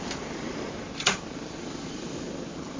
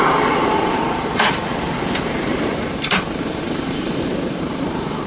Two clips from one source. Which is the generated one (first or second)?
second